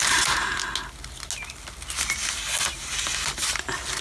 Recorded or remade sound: recorded